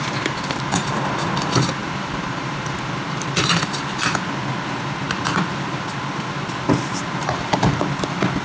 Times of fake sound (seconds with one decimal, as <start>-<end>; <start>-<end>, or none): 1.8-2.8; 7.2-7.8